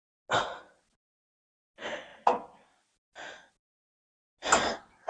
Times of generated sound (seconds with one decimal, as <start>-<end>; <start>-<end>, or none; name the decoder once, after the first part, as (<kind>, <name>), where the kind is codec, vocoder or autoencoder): none